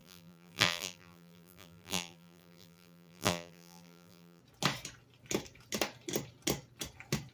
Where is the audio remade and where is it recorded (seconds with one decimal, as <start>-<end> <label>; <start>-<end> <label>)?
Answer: 0.0-4.4 remade; 4.4-7.3 recorded